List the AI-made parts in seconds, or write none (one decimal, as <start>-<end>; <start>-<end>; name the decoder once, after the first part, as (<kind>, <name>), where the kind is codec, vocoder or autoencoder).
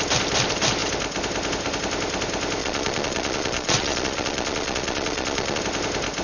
2.6-5.6 (vocoder, Vocos)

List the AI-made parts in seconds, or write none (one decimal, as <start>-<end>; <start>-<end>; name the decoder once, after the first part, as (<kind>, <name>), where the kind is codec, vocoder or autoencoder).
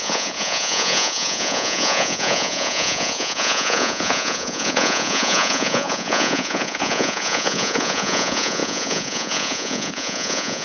0.0-10.6 (vocoder, Vocos)